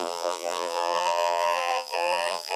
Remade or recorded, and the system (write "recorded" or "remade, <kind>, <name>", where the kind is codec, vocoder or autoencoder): remade, vocoder, BigVGAN v2